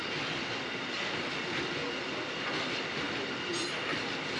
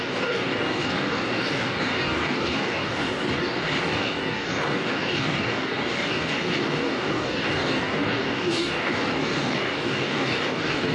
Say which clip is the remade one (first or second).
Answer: second